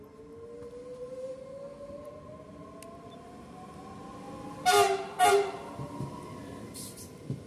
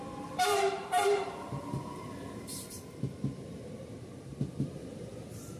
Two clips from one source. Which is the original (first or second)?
first